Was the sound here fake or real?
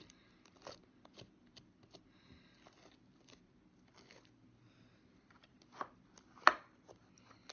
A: real